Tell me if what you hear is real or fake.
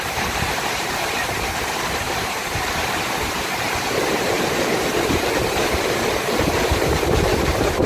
fake